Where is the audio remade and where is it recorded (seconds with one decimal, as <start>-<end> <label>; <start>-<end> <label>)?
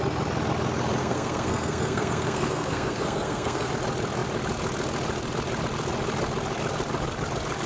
0.0-1.0 recorded; 1.0-3.7 remade; 3.7-7.7 recorded